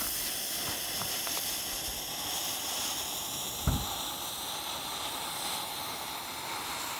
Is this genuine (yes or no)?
yes